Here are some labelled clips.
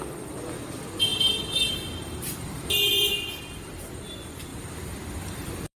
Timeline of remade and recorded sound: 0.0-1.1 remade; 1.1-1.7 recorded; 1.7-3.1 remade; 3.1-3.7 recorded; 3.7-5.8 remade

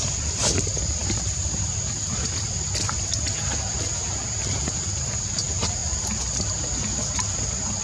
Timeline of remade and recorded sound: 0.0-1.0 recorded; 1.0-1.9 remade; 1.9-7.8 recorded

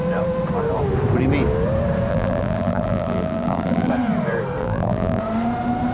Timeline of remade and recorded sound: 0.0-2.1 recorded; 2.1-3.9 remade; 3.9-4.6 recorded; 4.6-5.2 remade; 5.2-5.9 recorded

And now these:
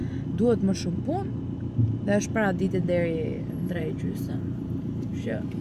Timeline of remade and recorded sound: 0.0-3.4 recorded; 3.4-5.6 remade

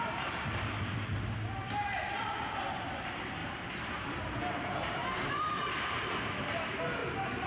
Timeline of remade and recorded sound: 0.0-1.6 recorded; 1.6-2.1 remade; 2.1-3.4 recorded; 3.4-6.4 remade; 6.4-7.5 recorded

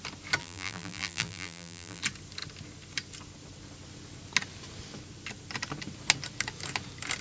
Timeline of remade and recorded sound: 0.0-0.4 recorded; 0.4-2.0 remade; 2.0-7.2 recorded

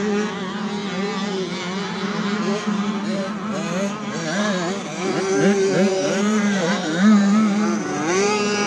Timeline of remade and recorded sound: 0.0-5.9 recorded; 5.9-8.7 remade

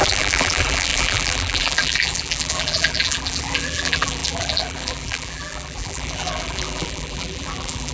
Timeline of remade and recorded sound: 0.0-7.9 remade